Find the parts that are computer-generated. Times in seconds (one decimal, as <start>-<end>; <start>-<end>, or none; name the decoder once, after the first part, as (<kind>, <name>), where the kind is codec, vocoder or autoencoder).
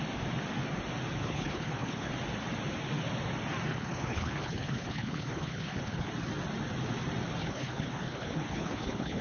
1.2-2.1 (codec, HILCodec); 3.7-6.1; 7.4-9.2